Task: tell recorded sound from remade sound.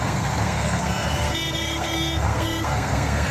remade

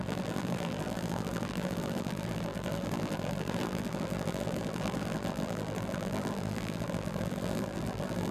remade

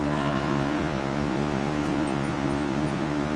remade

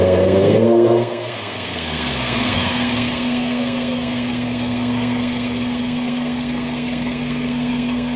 remade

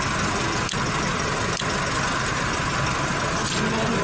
recorded